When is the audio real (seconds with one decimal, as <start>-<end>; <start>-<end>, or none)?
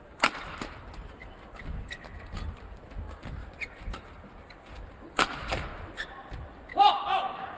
0.0-1.2; 2.1-3.4; 6.9-7.6